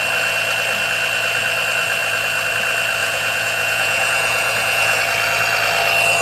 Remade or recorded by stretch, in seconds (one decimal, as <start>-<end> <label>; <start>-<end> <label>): 0.0-3.0 recorded; 3.0-5.0 remade; 5.0-6.2 recorded